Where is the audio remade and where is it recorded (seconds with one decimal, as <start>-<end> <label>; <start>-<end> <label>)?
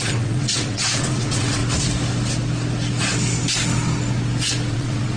0.0-1.6 remade; 1.6-4.7 recorded; 4.7-5.2 remade